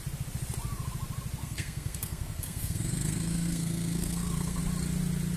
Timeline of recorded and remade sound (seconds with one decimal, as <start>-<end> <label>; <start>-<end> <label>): 0.0-1.4 recorded; 1.4-4.6 remade; 4.6-5.4 recorded